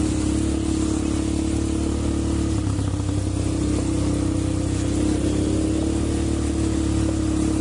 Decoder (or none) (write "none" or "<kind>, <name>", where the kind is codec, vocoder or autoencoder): none